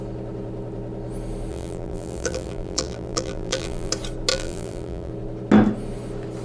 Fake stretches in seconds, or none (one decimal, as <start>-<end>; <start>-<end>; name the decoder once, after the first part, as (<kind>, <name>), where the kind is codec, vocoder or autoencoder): 1.5-3.9 (vocoder, BigVGAN v2); 4.3-5.1